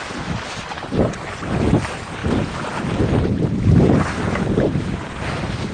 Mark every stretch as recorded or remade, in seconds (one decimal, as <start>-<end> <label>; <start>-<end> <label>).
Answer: 0.0-5.7 recorded